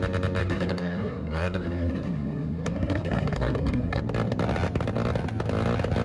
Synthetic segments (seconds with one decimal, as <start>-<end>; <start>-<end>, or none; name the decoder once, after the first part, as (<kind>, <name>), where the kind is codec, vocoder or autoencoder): 0.4-4.0 (codec, SNAC)